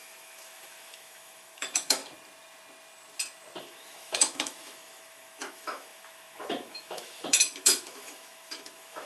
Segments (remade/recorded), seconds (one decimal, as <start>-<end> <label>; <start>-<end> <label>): 0.0-2.0 remade; 2.0-3.6 recorded; 3.6-9.1 remade